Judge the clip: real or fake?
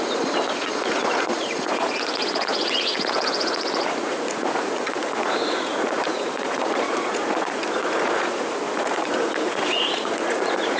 fake